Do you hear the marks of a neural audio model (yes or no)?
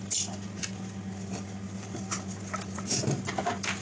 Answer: no